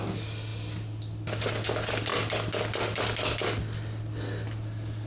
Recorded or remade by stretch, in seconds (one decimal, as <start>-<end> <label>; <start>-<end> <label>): 0.0-5.1 recorded